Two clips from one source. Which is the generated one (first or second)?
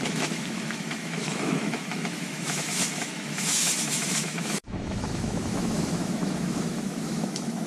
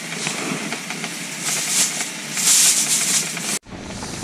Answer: first